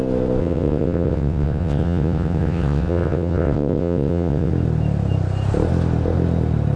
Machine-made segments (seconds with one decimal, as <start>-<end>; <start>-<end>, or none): 0.4-4.5